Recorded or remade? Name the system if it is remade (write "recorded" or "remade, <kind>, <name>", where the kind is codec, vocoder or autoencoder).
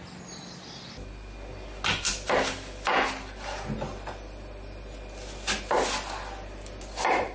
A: recorded